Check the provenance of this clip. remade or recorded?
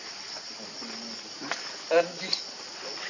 recorded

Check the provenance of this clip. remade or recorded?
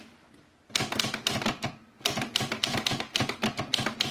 recorded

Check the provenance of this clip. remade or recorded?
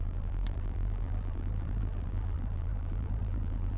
remade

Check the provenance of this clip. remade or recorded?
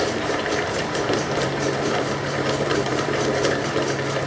remade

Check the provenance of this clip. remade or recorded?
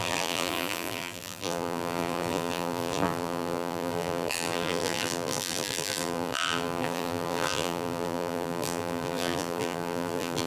remade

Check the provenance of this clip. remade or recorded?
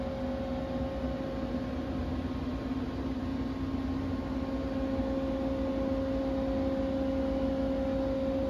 recorded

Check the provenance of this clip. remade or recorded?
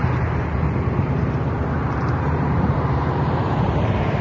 remade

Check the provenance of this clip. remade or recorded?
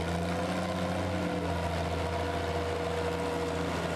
recorded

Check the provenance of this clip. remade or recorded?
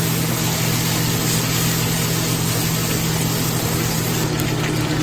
recorded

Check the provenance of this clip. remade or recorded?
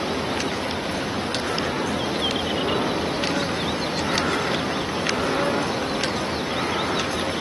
recorded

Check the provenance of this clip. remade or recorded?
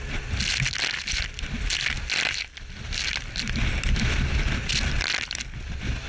recorded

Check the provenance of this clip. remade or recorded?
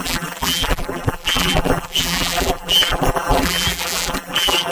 remade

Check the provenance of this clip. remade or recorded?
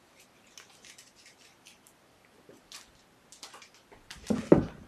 recorded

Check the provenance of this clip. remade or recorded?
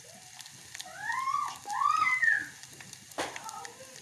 recorded